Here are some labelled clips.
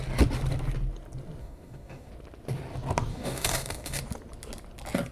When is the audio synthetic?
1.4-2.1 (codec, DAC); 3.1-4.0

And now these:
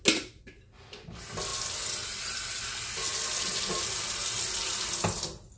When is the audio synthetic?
none

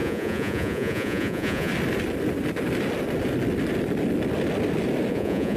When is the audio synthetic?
0.0-1.7 (vocoder, Vocos); 5.1-5.6

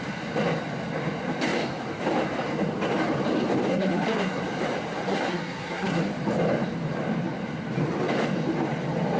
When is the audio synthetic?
3.7-4.4 (codec, SNAC); 5.1-6.0